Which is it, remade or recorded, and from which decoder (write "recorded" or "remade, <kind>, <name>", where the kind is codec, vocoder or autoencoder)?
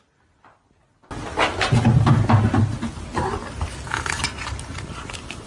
recorded